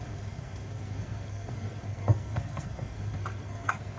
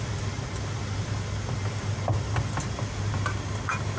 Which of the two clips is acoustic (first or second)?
second